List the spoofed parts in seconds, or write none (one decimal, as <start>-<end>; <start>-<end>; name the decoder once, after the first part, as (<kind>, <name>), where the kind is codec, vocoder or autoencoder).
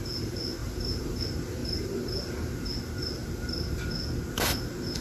0.6-1.2 (vocoder, BigVGAN v2); 1.6-2.7; 3.2-3.8